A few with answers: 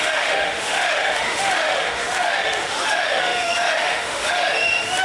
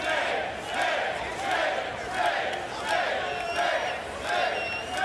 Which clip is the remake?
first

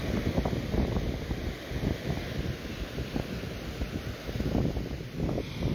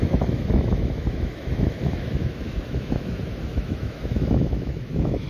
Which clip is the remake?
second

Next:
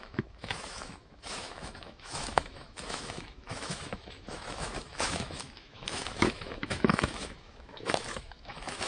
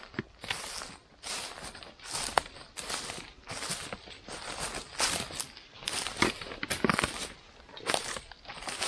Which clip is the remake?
first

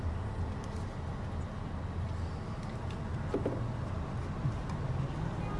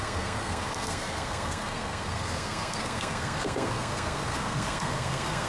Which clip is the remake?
second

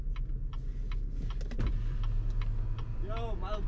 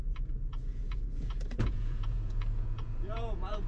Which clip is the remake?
second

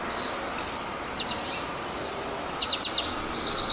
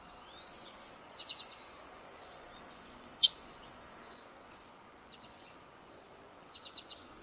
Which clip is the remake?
second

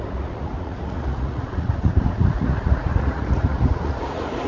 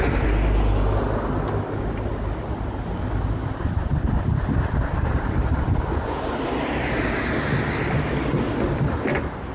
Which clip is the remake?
first